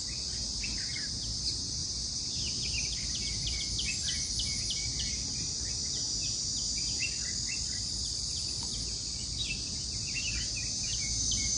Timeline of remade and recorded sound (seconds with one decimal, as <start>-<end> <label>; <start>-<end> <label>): 0.0-11.6 recorded